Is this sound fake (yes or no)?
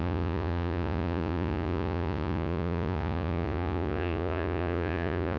yes